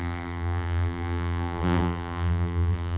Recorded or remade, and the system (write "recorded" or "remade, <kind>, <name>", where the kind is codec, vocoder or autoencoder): remade, vocoder, BigVGAN v2